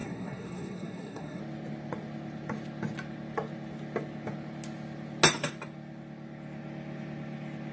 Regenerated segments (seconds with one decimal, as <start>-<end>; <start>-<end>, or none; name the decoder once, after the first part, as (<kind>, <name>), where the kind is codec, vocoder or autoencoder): 0.0-1.4 (codec, SNAC)